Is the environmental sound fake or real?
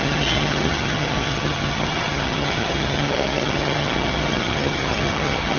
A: fake